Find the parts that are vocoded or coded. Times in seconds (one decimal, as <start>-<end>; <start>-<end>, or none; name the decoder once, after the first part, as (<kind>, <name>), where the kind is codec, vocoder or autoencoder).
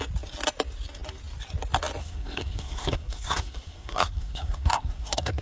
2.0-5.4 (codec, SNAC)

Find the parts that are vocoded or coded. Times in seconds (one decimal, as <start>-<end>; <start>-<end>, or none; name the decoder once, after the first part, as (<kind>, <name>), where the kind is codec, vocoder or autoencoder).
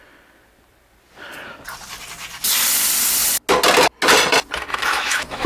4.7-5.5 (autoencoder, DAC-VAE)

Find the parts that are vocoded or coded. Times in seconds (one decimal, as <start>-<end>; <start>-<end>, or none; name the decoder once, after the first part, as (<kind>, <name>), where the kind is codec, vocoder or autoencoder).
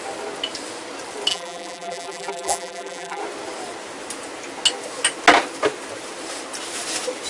1.3-3.2 (vocoder, BigVGAN v2)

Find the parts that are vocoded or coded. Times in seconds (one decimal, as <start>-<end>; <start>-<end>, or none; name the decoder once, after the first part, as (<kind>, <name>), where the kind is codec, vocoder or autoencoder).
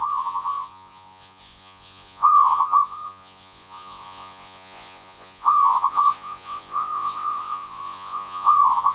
0.0-8.9 (vocoder, Vocos)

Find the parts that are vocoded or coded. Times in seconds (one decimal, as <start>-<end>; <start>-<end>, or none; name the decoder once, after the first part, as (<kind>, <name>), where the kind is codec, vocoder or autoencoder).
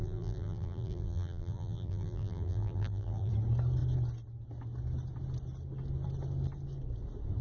0.0-3.3 (vocoder, BigVGAN v2)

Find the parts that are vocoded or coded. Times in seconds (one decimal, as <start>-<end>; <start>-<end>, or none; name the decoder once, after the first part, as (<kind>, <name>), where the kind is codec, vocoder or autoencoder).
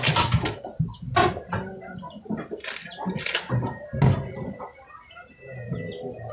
none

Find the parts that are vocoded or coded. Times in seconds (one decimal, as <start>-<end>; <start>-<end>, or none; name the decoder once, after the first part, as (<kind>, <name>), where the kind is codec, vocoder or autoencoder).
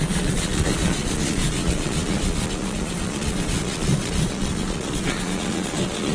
0.0-6.1 (vocoder, Vocos)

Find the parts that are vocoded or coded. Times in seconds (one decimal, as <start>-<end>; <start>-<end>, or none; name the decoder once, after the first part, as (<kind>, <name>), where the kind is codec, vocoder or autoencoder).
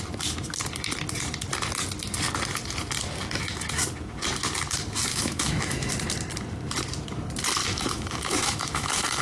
5.1-5.9 (autoencoder, DAC-VAE); 7.6-9.2